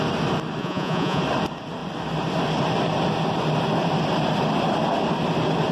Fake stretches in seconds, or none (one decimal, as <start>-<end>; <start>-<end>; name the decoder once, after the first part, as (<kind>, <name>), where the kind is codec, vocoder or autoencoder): 0.6-1.2 (vocoder, Vocos)